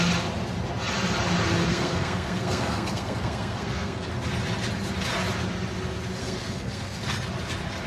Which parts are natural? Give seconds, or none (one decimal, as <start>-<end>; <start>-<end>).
0.0-1.7; 4.1-6.2; 7.0-7.9